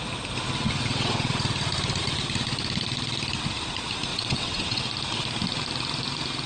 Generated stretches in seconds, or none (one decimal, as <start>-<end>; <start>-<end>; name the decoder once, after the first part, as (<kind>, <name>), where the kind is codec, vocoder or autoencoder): 0.9-1.4 (vocoder, WaveNeXt); 4.1-4.8